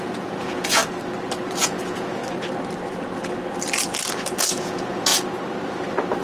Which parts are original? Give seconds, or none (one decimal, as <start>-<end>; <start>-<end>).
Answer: 0.8-1.6; 2.2-4.6; 5.1-6.2